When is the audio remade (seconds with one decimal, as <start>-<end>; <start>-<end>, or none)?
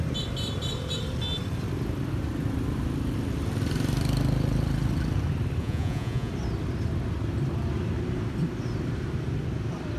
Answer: 5.6-6.3